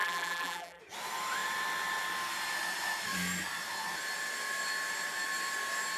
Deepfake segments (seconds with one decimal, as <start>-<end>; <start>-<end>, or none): 0.0-0.8